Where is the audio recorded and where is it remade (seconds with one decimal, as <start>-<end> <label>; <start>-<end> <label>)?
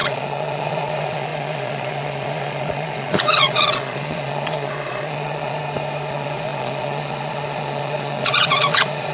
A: 0.0-5.6 remade; 5.6-6.1 recorded; 6.1-9.1 remade